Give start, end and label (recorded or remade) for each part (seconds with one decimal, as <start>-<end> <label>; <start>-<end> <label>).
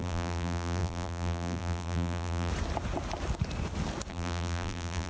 0.0-2.5 remade; 2.5-4.1 recorded; 4.1-5.1 remade